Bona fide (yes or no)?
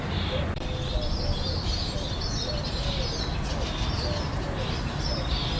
yes